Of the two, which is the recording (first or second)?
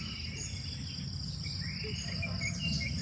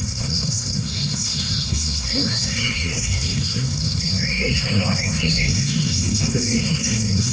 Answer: first